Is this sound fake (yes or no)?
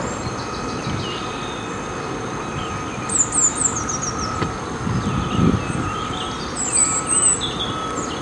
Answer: no